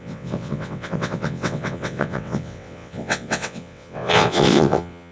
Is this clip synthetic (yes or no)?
yes